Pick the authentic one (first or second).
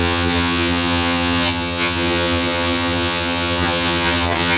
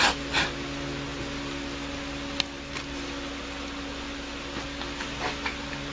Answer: second